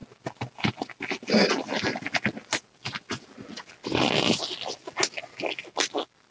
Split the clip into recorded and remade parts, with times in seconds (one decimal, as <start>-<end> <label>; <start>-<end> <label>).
0.0-6.3 recorded